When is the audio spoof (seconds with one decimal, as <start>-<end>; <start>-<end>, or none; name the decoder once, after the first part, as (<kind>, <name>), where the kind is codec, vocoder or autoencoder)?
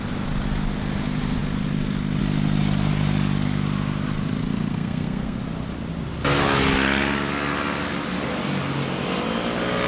4.7-5.4 (codec, SNAC)